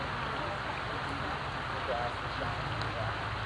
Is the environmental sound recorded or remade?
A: recorded